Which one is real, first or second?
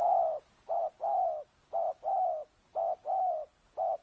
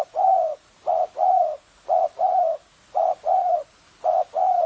first